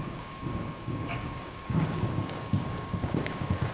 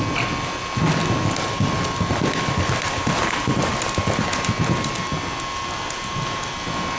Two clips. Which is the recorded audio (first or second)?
second